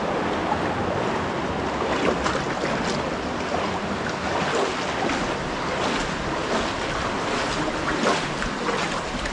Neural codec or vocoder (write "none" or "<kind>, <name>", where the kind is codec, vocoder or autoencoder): none